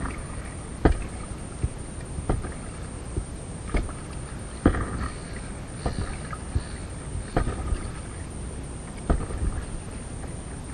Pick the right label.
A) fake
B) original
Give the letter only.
B